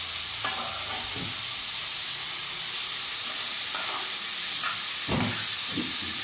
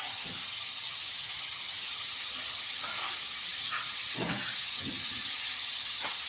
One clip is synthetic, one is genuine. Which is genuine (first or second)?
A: first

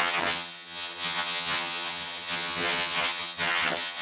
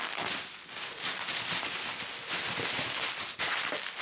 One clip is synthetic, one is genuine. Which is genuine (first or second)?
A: second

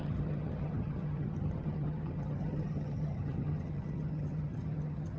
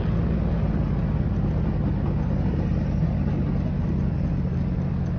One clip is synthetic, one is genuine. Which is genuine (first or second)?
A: second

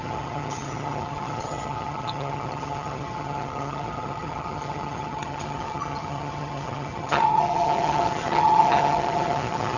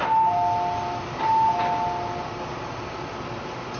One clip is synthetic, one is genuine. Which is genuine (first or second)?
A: second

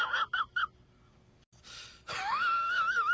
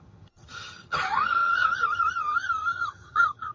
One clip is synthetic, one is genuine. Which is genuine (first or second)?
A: first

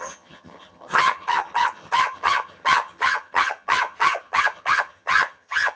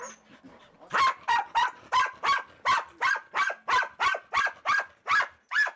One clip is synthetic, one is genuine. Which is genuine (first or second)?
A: second